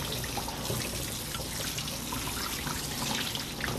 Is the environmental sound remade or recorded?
recorded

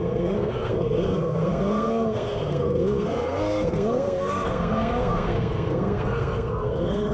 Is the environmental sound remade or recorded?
remade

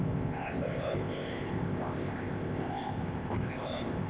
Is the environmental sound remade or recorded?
remade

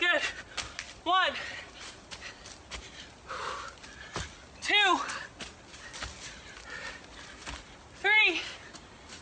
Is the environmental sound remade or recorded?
recorded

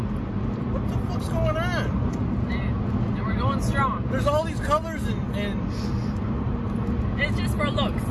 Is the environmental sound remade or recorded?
recorded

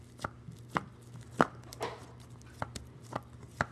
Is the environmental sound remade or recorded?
recorded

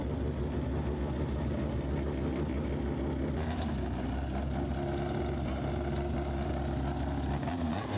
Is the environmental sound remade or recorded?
recorded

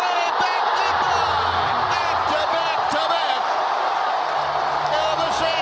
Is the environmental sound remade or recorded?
recorded